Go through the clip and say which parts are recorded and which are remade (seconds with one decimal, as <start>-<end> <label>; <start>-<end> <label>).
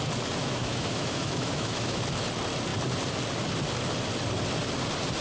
0.0-0.4 recorded; 0.4-2.0 remade; 2.0-5.2 recorded